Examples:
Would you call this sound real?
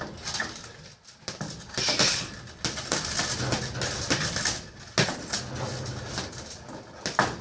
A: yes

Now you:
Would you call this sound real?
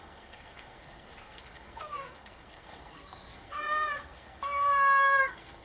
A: no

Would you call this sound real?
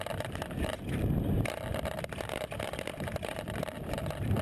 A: no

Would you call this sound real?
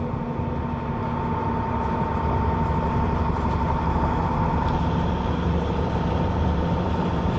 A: yes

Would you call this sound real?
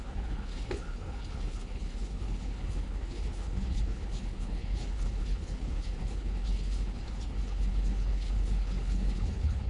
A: no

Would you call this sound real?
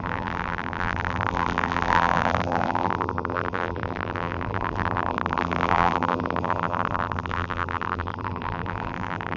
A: no